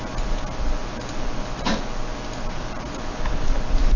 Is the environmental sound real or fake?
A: real